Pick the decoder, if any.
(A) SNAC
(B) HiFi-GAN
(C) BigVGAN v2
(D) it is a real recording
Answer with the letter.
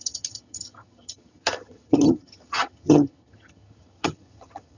B